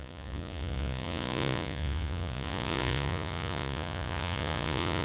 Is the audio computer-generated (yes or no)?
yes